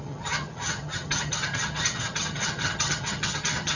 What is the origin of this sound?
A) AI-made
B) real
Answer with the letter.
A